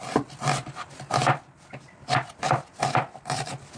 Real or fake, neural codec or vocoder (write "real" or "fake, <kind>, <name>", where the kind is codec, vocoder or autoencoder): fake, vocoder, BigVGAN v2